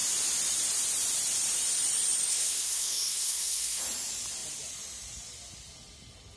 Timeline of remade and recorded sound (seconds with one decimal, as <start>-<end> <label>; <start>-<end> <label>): 0.0-2.3 recorded; 2.3-3.8 remade; 3.8-6.4 recorded